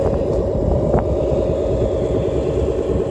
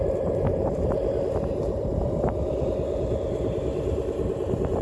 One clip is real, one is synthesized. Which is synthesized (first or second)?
second